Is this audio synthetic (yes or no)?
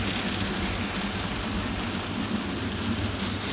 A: no